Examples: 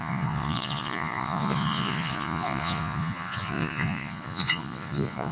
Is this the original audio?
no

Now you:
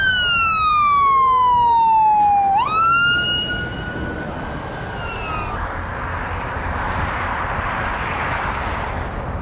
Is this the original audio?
yes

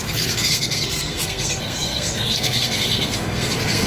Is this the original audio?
no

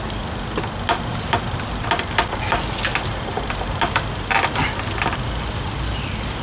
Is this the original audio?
yes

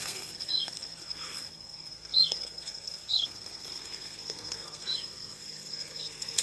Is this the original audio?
no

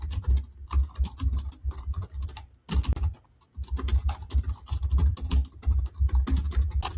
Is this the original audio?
yes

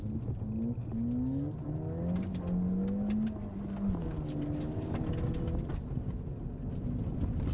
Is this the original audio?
yes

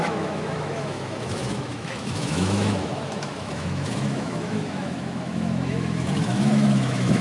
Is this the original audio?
no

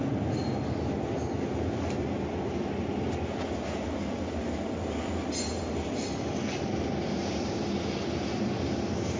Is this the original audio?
yes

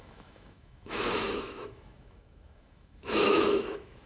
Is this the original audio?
no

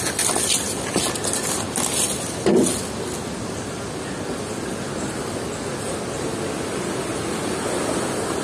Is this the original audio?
yes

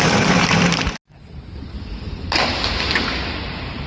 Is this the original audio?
yes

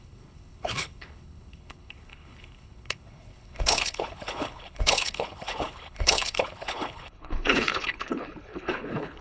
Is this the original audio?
no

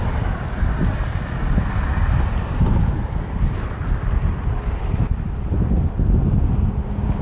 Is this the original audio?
yes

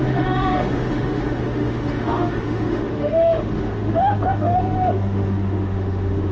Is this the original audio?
no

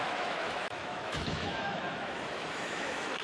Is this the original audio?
no